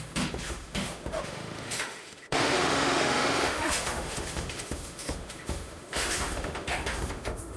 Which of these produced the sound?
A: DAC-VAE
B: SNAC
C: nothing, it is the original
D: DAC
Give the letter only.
A